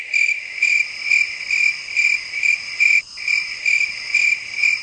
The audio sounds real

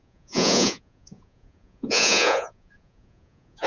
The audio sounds fake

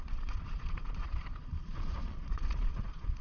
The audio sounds fake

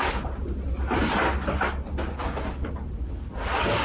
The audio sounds real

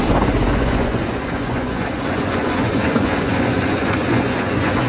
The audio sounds fake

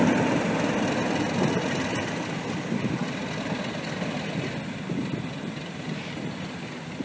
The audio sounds real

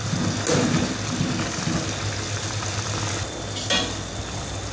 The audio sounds real